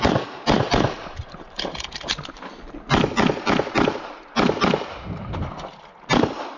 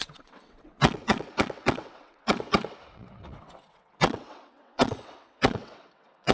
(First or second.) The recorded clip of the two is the first